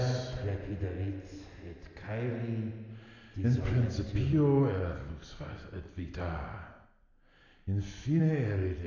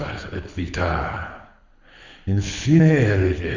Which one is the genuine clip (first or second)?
first